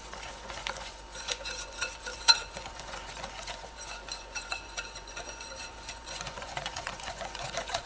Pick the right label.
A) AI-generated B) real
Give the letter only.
A